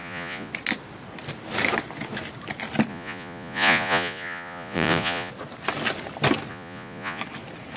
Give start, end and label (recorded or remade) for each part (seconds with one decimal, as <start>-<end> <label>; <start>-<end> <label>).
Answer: 0.0-0.5 remade; 0.5-2.9 recorded; 2.9-5.3 remade; 5.3-6.5 recorded; 6.5-7.2 remade; 7.2-7.8 recorded